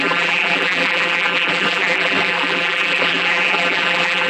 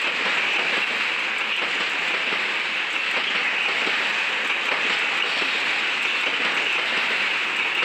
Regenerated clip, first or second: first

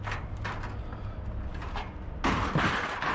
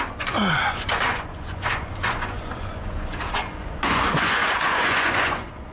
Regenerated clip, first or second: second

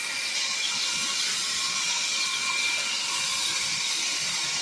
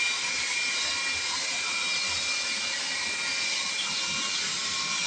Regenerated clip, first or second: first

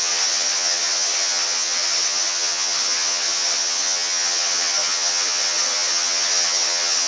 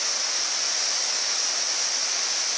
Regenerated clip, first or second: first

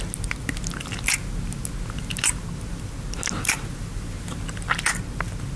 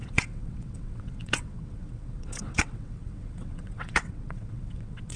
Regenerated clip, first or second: second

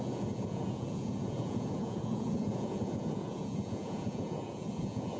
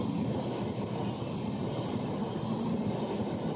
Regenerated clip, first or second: first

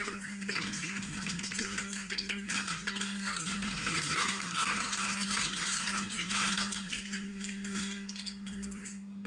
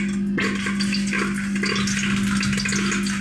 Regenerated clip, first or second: first